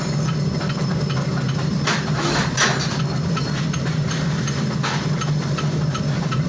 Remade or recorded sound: recorded